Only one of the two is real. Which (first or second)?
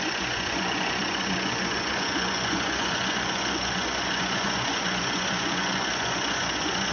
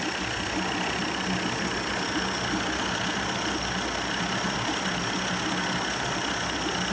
second